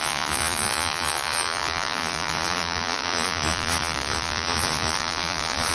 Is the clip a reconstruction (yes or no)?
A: yes